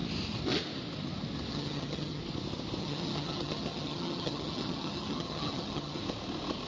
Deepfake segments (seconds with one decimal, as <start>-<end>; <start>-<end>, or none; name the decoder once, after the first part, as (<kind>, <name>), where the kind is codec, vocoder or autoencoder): 1.5-2.2 (vocoder, HiFi-GAN); 2.8-6.0